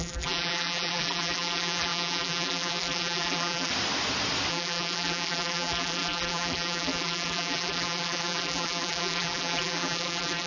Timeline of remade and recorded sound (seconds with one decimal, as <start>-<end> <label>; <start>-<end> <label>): 0.0-3.7 remade; 3.7-4.5 recorded; 4.5-10.5 remade